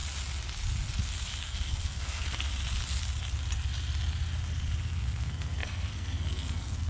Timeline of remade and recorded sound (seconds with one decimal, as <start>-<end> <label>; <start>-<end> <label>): 0.0-1.4 recorded; 1.4-2.5 remade; 2.5-4.8 recorded; 4.8-6.9 remade